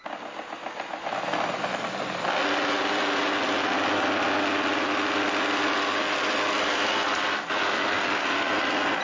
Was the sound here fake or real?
real